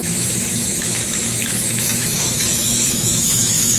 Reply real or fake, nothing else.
fake